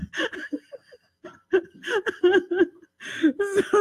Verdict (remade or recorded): recorded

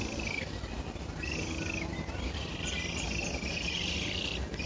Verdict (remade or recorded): recorded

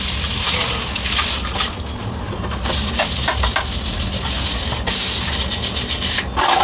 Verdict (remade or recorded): recorded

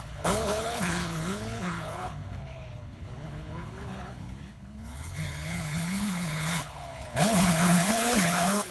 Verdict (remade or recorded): remade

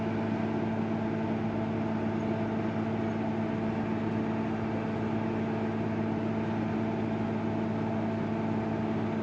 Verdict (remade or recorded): recorded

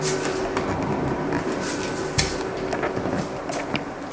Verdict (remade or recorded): recorded